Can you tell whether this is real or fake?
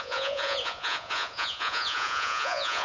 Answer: fake